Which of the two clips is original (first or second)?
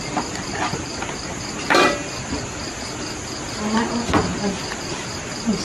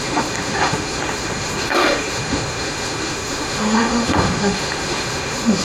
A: first